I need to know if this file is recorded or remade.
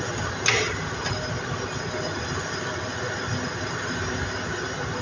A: recorded